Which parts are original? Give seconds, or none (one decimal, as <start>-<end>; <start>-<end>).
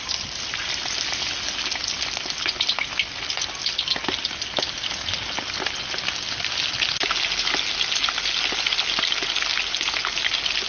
0.0-10.7